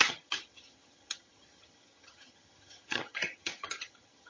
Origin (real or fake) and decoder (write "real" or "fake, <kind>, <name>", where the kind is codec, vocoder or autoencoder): fake, vocoder, HiFi-GAN